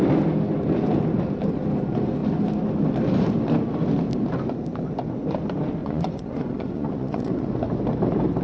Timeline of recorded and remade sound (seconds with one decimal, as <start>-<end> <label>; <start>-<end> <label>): 0.0-5.8 recorded; 5.8-7.6 remade; 7.6-8.4 recorded